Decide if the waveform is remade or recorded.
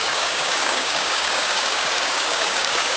remade